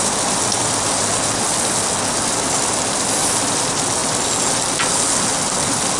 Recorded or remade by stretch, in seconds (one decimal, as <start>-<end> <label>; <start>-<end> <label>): 0.0-6.0 recorded